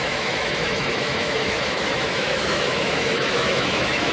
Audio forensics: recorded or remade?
remade